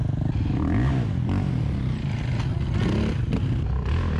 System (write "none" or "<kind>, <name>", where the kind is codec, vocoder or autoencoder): none